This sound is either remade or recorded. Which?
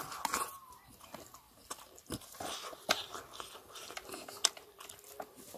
recorded